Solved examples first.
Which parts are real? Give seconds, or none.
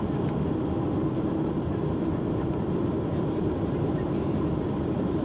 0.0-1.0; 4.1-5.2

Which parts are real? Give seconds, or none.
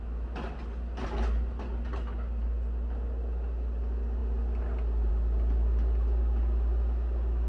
0.0-7.5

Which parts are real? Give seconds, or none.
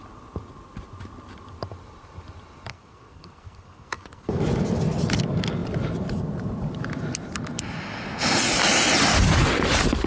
0.0-2.7; 4.4-10.1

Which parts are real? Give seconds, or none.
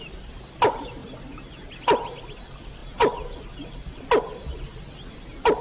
0.0-5.6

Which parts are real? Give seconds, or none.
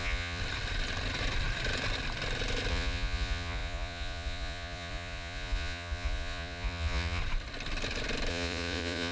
0.4-2.7; 7.2-8.3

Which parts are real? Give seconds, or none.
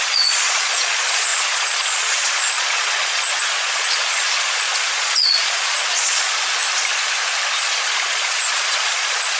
6.6-7.6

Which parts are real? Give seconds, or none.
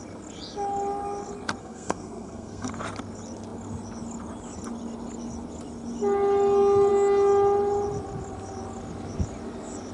0.0-1.6; 2.7-9.9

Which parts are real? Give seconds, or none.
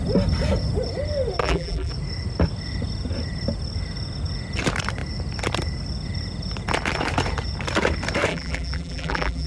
0.0-1.4; 1.9-8.3